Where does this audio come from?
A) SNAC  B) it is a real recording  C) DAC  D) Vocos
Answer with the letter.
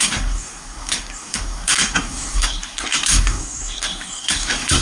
A